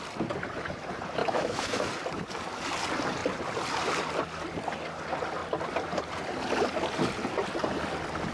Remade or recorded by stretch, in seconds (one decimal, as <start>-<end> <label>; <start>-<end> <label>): 0.0-1.2 recorded; 1.2-1.9 remade; 1.9-8.3 recorded